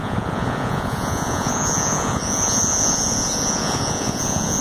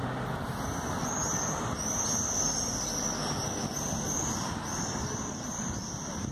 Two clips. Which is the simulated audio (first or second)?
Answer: first